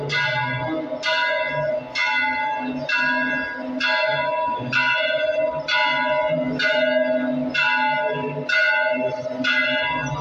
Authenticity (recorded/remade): recorded